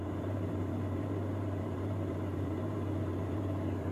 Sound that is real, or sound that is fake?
fake